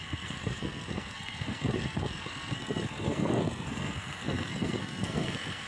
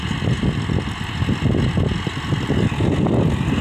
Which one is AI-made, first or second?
first